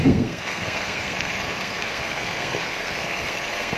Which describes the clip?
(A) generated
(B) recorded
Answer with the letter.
A